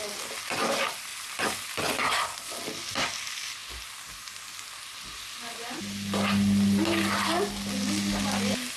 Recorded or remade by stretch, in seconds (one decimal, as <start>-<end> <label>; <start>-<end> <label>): 0.0-8.8 recorded